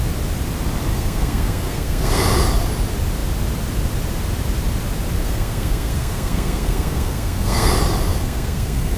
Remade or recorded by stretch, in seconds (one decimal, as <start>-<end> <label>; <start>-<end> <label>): 0.0-0.9 recorded; 0.9-2.2 remade; 2.2-5.2 recorded; 5.2-7.7 remade; 7.7-8.1 recorded; 8.1-9.0 remade